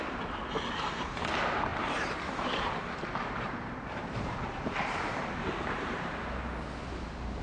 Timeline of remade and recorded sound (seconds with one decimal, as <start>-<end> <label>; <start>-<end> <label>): 0.0-1.7 recorded; 1.7-6.1 remade; 6.1-7.4 recorded